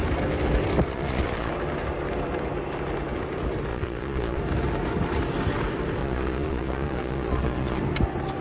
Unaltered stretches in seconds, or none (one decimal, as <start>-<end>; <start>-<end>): 0.0-0.9; 1.5-3.7; 4.4-6.0; 7.8-8.4